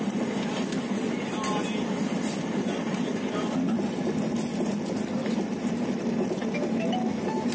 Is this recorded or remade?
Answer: recorded